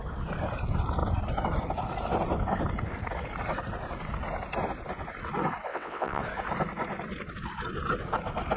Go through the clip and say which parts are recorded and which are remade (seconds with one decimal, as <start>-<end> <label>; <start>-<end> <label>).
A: 0.0-5.7 recorded; 5.7-6.2 remade; 6.2-8.6 recorded